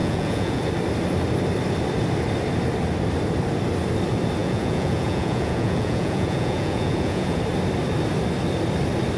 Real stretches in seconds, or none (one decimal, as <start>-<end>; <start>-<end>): 0.6-4.4; 7.4-9.2